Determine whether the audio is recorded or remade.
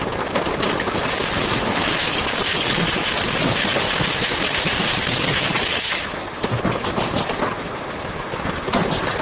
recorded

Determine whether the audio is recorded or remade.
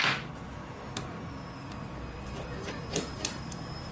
recorded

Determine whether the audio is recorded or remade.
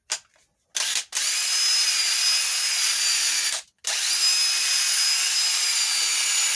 recorded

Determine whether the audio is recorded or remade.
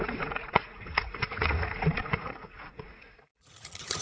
remade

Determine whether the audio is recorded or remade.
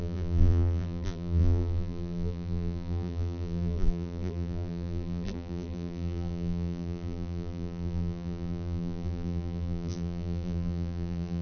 remade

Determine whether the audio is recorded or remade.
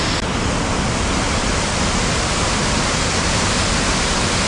recorded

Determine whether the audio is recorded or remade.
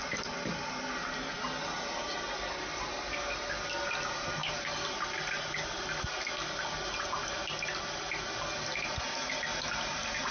recorded